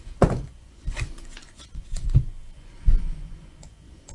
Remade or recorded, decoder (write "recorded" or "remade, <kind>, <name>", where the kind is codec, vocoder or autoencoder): remade, vocoder, Vocos